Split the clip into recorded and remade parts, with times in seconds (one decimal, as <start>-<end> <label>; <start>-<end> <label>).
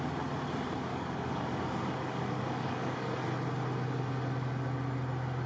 0.0-0.9 recorded; 0.9-3.1 remade; 3.1-5.5 recorded